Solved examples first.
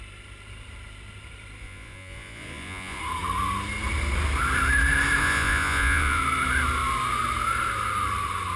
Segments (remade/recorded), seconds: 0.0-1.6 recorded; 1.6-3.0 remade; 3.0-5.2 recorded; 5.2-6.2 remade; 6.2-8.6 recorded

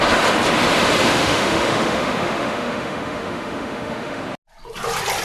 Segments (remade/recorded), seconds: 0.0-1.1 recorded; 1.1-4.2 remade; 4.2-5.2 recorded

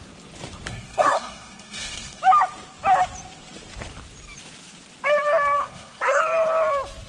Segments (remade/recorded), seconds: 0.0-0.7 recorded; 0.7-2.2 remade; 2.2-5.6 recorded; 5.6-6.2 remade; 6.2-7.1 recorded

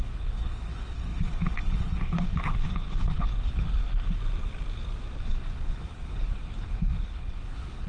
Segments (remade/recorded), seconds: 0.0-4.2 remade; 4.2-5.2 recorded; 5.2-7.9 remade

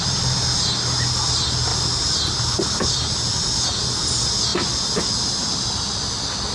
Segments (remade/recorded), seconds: 0.0-1.7 recorded; 1.7-3.3 remade; 3.3-6.5 recorded